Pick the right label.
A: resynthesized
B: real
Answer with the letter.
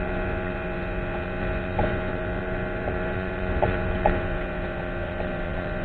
A